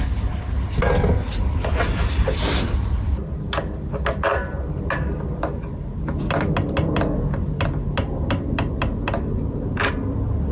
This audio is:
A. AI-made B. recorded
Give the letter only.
B